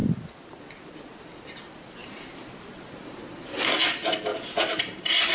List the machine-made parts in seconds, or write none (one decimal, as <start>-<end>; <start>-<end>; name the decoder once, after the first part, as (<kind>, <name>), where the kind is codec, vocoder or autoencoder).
2.0-3.6 (vocoder, BigVGAN v2); 4.3-5.3